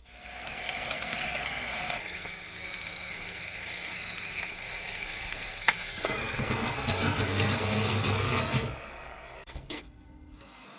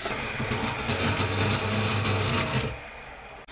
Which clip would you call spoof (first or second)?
first